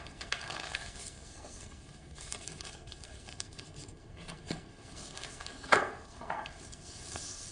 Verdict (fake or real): fake